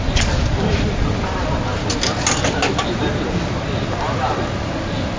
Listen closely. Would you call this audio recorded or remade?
recorded